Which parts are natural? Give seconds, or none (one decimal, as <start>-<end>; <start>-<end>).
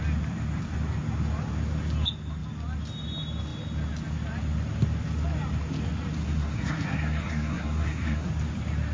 0.0-6.2; 8.3-8.9